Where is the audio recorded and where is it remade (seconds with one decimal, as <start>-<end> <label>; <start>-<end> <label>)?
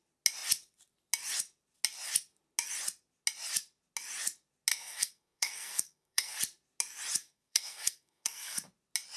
0.0-4.7 recorded; 4.7-6.4 remade; 6.4-7.2 recorded; 7.2-8.7 remade; 8.7-9.2 recorded